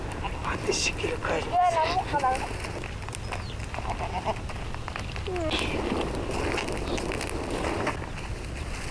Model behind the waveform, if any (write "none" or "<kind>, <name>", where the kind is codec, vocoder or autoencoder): none